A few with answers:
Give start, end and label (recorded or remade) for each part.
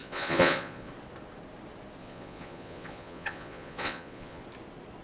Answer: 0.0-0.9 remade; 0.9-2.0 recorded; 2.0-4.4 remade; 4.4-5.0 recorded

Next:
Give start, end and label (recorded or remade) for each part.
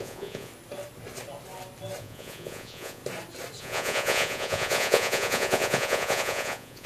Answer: 0.0-0.5 remade; 0.5-2.0 recorded; 2.0-3.0 remade; 3.0-3.6 recorded; 3.6-6.9 remade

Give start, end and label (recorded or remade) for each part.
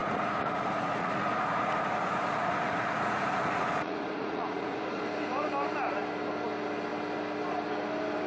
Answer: 0.0-5.0 remade; 5.0-8.3 recorded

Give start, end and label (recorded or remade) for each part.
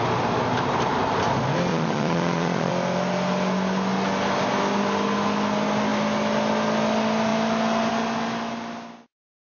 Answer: 0.0-1.7 recorded; 1.7-2.7 remade; 2.7-9.6 recorded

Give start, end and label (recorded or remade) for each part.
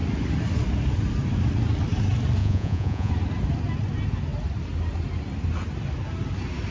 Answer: 0.0-2.4 recorded; 2.4-3.1 remade; 3.1-6.7 recorded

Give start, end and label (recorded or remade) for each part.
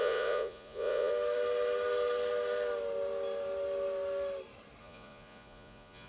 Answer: 0.0-1.1 remade; 1.1-4.8 recorded; 4.8-6.1 remade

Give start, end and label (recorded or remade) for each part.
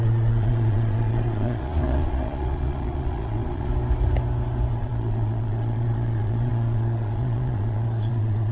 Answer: 0.0-3.7 remade; 3.7-4.7 recorded; 4.7-8.5 remade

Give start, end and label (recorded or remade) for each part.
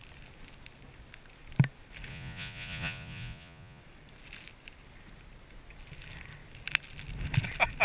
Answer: 0.0-2.1 recorded; 2.1-3.8 remade; 3.8-7.8 recorded